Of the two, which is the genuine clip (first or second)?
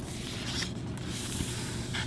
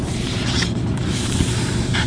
first